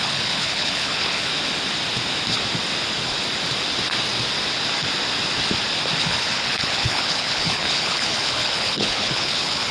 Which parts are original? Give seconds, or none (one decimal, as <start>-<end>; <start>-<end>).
1.3-6.0